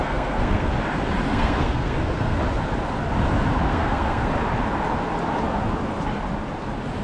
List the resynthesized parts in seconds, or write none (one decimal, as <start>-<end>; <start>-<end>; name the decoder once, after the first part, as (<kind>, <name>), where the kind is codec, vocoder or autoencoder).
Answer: 0.0-0.7 (codec, SNAC); 1.3-2.4; 3.7-4.3